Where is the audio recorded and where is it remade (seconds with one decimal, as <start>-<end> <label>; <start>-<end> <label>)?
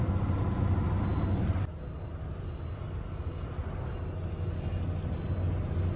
0.0-6.0 recorded